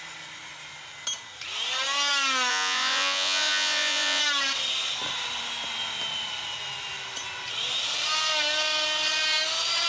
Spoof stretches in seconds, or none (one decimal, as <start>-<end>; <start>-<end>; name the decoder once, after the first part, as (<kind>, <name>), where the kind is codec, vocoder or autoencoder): 2.5-4.2 (vocoder, Vocos)